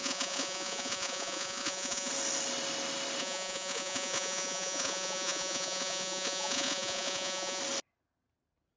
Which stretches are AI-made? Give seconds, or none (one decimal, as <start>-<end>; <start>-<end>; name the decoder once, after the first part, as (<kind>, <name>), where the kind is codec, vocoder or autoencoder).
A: 0.0-2.1 (vocoder, Vocos); 3.2-7.6